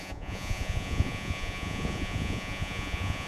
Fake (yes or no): yes